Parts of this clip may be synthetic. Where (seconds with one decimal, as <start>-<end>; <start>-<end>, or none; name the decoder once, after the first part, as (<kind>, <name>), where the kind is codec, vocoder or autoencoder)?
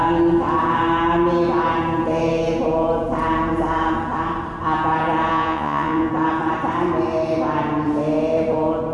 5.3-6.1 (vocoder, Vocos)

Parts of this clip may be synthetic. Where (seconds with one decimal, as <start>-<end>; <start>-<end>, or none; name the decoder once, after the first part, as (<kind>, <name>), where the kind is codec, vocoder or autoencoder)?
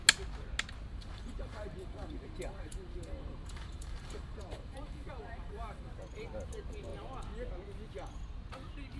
0.9-5.9 (vocoder, BigVGAN v2)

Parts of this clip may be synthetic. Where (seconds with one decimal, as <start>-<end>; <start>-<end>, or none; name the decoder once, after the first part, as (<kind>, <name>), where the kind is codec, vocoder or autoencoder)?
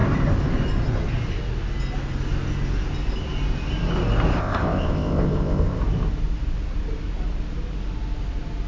4.4-5.8 (codec, ZipCodec)